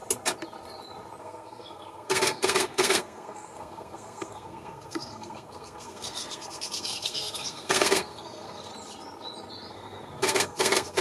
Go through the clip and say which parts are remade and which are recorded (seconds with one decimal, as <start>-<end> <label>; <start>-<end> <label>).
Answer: 0.0-1.2 recorded; 1.2-8.7 remade; 8.7-9.7 recorded; 9.7-11.0 remade